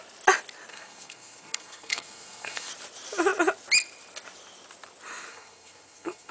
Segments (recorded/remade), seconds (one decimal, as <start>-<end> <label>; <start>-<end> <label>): 0.0-0.7 recorded; 0.7-2.7 remade; 2.7-5.3 recorded; 5.3-6.3 remade